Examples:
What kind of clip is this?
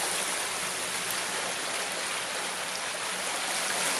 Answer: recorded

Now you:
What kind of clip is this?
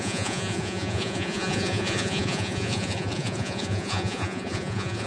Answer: remade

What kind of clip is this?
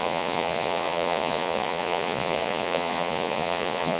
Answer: remade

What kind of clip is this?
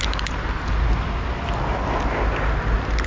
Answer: recorded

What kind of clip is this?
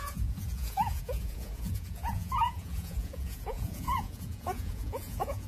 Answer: remade